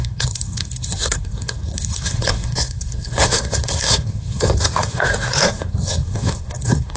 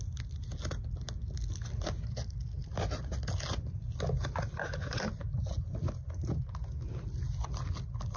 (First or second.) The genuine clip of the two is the second